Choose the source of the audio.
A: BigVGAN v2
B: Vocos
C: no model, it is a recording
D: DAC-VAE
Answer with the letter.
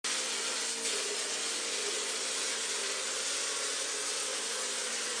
C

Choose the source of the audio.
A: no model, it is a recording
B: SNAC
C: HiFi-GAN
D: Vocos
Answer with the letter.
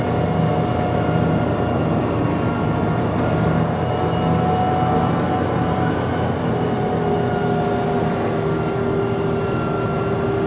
A